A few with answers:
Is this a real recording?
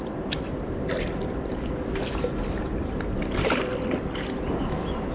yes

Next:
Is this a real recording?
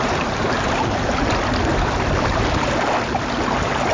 yes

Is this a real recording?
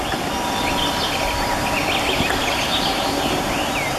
yes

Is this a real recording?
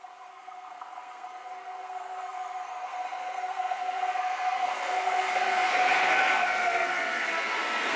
no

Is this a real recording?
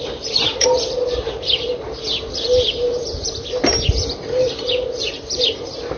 no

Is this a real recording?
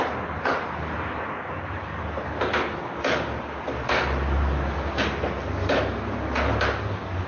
yes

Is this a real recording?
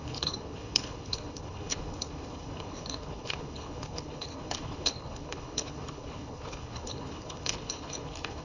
no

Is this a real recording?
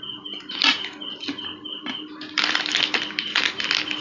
yes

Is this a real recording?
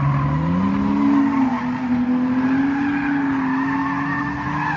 yes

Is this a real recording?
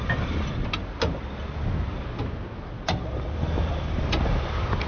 yes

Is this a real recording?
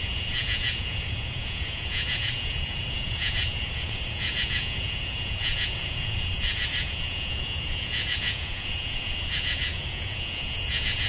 no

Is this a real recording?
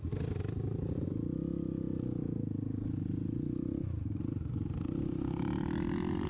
yes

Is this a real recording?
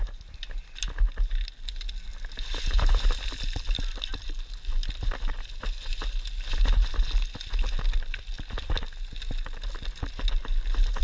yes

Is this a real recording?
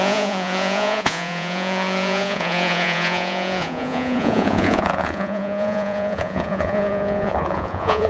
no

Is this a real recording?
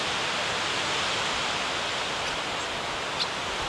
yes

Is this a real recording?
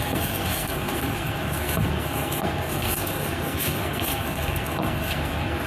no